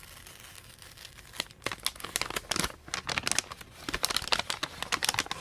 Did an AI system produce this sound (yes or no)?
no